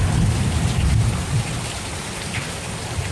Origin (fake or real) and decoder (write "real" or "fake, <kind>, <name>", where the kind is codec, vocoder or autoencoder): real